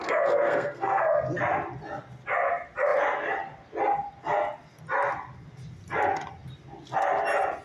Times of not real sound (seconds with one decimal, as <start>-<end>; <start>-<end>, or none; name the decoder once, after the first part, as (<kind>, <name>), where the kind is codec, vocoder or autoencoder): 0.0-1.4 (codec, SNAC)